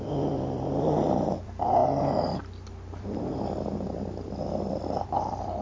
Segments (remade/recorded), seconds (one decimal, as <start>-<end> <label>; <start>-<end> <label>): 0.0-1.8 remade; 1.8-2.9 recorded; 2.9-5.6 remade